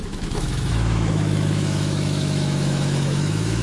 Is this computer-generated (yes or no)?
yes